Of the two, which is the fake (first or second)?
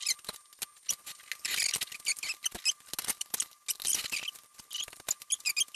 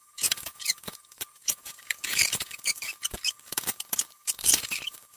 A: second